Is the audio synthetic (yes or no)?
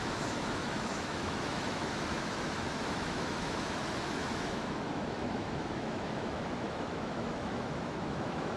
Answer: yes